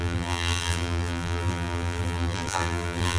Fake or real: fake